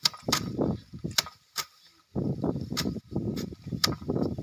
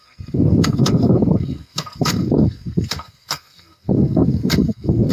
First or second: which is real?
first